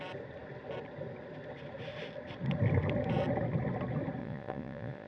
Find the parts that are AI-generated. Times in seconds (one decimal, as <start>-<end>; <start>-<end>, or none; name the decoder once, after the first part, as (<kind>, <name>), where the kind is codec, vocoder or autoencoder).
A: 4.2-5.1 (vocoder, Vocos)